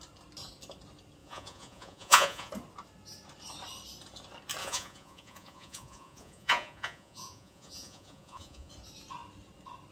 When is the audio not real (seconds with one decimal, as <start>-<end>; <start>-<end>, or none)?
1.2-2.5; 4.6-8.7